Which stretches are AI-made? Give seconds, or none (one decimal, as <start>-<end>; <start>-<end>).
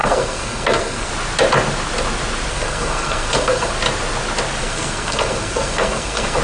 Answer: 0.0-1.1; 2.5-3.7; 4.6-6.4